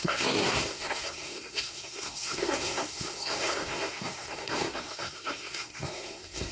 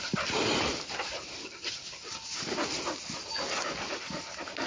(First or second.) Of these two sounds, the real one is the second